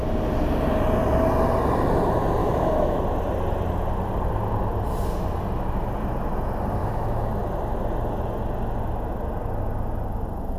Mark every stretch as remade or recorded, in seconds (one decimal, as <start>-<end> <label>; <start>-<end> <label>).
0.0-2.4 recorded; 2.4-3.0 remade; 3.0-6.8 recorded; 6.8-7.3 remade; 7.3-10.6 recorded